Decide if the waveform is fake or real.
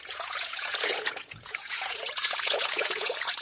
fake